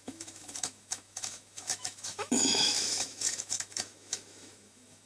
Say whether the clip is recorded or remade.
remade